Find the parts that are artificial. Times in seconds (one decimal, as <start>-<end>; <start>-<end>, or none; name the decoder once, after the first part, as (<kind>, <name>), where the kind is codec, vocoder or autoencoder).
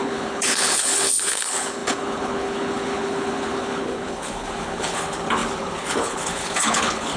0.0-7.2 (codec, HILCodec)